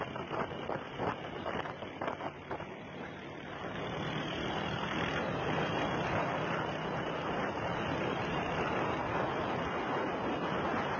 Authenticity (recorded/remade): remade